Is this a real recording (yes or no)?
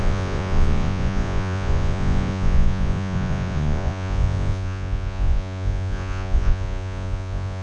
no